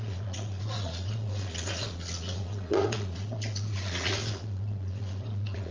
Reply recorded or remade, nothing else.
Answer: remade